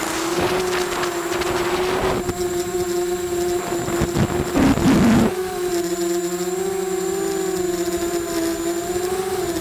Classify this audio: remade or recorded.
recorded